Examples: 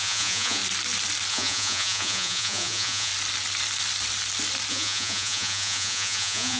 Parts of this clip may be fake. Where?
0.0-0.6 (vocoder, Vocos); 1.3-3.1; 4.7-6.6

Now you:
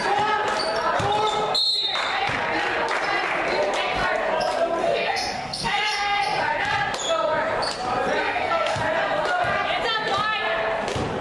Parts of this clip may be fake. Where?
4.8-6.2 (codec, SNAC); 8.2-8.8

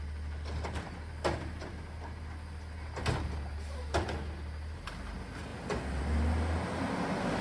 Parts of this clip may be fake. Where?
none

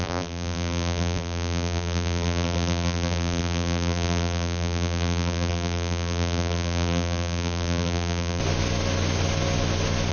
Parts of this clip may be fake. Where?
0.0-8.4 (vocoder, BigVGAN v2)

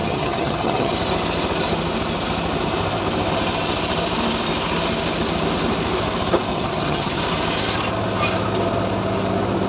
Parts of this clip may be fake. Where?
0.0-0.9 (vocoder, HiFi-GAN); 6.5-7.2

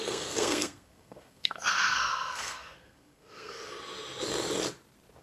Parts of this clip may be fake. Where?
0.0-3.6 (codec, SNAC)

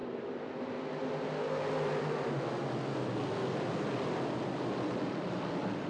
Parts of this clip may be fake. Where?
none